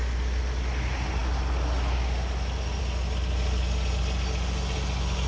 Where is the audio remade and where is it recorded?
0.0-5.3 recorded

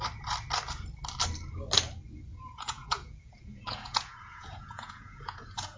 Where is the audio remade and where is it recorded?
0.0-2.3 recorded; 2.3-5.8 remade